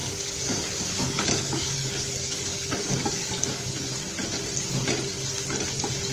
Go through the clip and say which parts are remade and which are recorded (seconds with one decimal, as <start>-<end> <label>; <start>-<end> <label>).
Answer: 0.0-3.7 remade; 3.7-6.1 recorded